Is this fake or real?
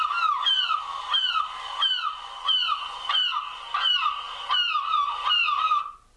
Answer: real